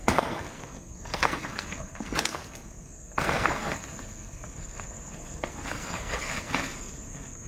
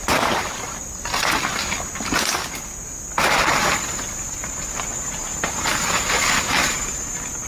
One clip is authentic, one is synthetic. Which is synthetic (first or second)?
first